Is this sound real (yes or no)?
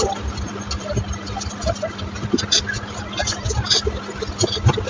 yes